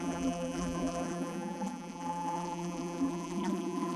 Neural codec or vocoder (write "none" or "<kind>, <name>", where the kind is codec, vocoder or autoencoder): vocoder, BigVGAN v2